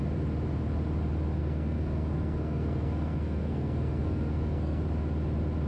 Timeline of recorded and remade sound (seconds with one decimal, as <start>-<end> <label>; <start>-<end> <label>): 0.0-1.4 recorded; 1.4-4.8 remade; 4.8-5.7 recorded